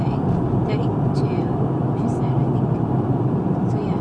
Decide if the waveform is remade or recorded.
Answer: remade